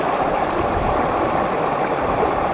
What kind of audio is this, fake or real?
real